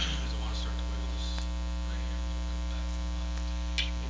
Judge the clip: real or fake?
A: real